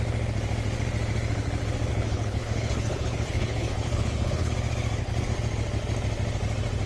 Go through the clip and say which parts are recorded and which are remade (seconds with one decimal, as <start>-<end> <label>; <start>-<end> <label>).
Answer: 0.0-1.9 recorded; 1.9-4.5 remade; 4.5-6.9 recorded

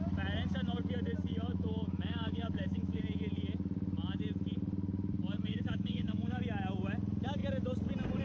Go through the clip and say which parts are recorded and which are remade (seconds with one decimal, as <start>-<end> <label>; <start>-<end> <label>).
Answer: 0.0-1.3 recorded; 1.3-3.0 remade; 3.0-5.5 recorded; 5.5-6.4 remade; 6.4-8.2 recorded

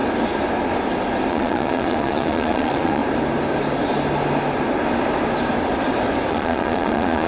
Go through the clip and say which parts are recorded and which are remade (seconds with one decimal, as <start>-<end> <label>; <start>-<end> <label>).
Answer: 0.0-1.3 recorded; 1.3-3.0 remade; 3.0-6.3 recorded; 6.3-7.3 remade

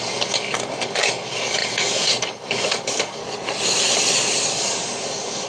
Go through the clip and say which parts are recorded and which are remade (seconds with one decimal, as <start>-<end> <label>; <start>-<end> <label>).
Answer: 0.0-3.2 remade; 3.2-4.5 recorded; 4.5-5.5 remade

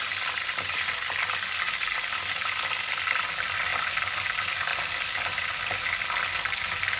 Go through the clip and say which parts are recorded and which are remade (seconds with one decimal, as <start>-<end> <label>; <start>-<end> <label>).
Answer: 0.0-7.0 recorded

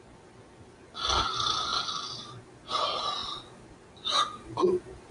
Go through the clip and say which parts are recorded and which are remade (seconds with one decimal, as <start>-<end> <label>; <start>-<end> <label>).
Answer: 0.0-5.1 recorded

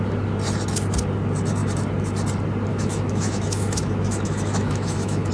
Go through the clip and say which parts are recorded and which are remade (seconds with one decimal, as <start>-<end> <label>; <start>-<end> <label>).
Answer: 0.0-2.7 recorded; 2.7-5.3 remade